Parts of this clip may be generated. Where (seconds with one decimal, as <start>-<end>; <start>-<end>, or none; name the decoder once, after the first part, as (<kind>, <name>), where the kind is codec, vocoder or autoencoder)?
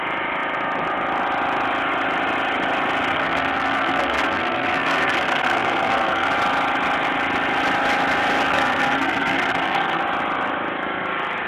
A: 3.1-6.3 (codec, SNAC); 8.5-10.0